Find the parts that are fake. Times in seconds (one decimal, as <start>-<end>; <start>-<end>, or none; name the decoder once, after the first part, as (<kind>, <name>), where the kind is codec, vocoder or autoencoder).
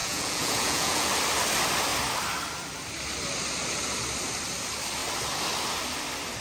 0.0-1.1 (vocoder, Vocos)